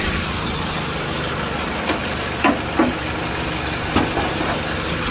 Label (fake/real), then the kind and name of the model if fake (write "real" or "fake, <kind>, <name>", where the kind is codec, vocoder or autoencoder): real